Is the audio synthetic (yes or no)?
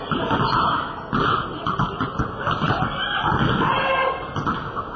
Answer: no